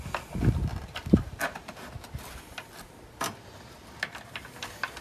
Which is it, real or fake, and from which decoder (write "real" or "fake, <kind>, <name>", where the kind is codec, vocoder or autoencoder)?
real